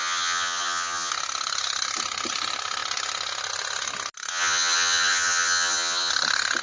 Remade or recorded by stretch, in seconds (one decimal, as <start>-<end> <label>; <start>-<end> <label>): 0.0-1.1 remade; 1.1-4.3 recorded; 4.3-6.1 remade; 6.1-6.6 recorded